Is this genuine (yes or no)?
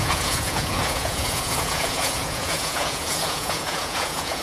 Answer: no